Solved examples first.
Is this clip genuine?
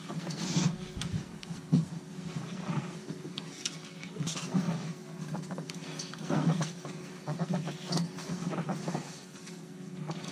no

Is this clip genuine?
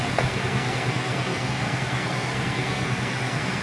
no